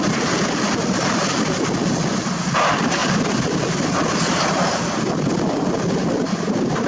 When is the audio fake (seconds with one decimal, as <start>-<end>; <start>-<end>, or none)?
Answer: none